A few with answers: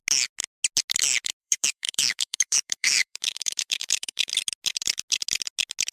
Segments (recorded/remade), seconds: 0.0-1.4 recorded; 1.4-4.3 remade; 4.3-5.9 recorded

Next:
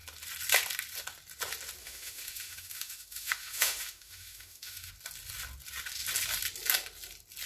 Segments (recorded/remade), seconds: 0.0-1.8 recorded; 1.8-4.9 remade; 4.9-7.5 recorded

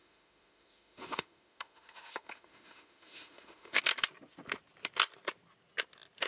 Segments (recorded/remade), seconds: 0.0-3.8 remade; 3.8-6.3 recorded

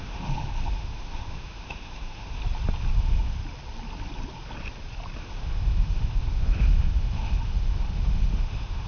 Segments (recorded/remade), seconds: 0.0-2.4 remade; 2.4-2.9 recorded; 2.9-3.4 remade; 3.4-5.2 recorded; 5.2-8.9 remade

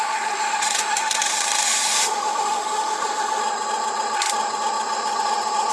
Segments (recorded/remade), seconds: 0.0-3.4 remade; 3.4-5.7 recorded

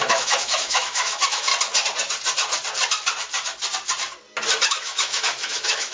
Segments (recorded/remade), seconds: 0.0-1.5 remade; 1.5-4.7 recorded; 4.7-5.9 remade

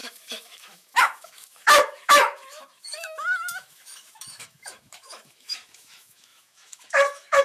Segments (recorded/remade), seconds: 0.0-7.4 remade

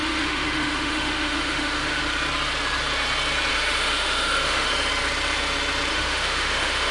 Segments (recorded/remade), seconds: 0.0-2.0 remade; 2.0-3.5 recorded; 3.5-4.7 remade; 4.7-5.9 recorded; 5.9-6.9 remade